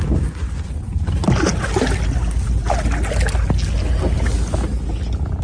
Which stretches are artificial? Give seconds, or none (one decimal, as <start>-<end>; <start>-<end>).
none